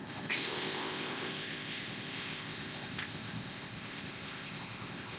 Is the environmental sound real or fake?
fake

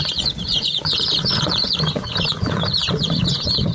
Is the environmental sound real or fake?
fake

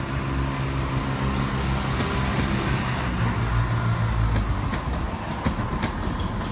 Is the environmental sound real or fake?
real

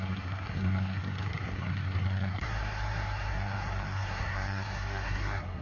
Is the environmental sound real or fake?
fake